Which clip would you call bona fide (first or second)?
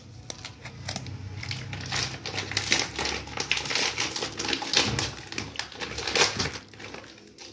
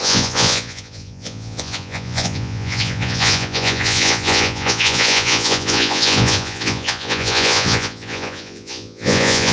first